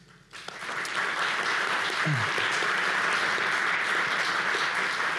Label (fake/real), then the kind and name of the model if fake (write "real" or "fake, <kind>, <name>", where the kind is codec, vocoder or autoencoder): real